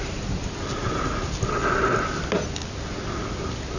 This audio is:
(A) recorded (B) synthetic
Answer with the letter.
A